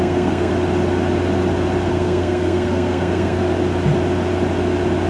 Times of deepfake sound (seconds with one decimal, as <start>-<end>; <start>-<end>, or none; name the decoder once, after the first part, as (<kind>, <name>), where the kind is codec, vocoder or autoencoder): 0.0-0.5 (codec, SNAC); 1.9-3.4